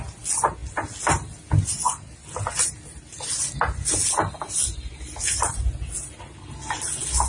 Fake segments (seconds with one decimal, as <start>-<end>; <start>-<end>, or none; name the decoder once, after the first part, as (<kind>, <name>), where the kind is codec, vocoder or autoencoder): none